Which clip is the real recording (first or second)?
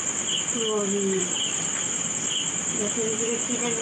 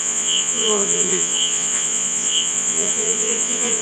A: first